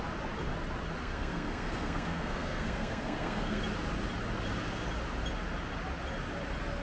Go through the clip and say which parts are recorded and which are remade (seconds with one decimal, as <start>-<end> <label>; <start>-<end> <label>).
0.0-1.0 recorded; 1.0-3.6 remade; 3.6-6.8 recorded